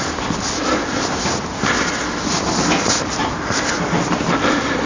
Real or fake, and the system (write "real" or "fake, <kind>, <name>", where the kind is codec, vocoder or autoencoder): real